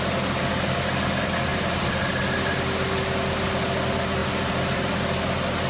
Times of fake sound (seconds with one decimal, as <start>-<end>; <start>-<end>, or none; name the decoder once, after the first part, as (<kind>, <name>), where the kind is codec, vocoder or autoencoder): none